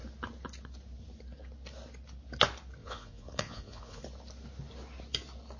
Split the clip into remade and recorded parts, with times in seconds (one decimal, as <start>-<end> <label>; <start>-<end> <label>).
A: 0.0-2.8 recorded; 2.8-4.0 remade; 4.0-5.6 recorded